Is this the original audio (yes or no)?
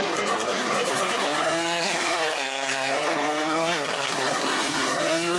no